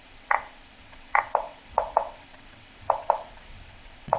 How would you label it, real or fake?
fake